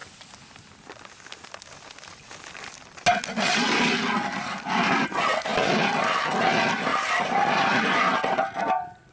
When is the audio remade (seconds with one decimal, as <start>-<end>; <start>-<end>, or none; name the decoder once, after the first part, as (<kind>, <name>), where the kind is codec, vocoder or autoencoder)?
6.9-7.8 (vocoder, BigVGAN v2)